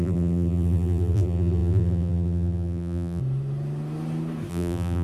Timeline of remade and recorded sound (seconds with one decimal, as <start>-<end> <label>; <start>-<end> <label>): 0.0-3.2 remade; 3.2-4.5 recorded; 4.5-5.0 remade